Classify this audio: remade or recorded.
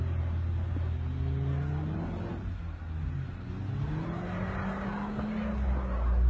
recorded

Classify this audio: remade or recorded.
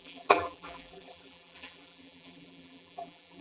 remade